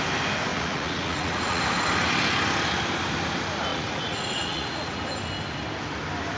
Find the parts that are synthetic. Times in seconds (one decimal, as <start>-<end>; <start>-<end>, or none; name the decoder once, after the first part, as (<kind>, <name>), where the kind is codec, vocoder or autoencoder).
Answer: 0.5-1.6 (vocoder, Vocos); 3.7-5.0